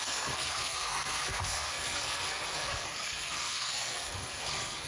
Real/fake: fake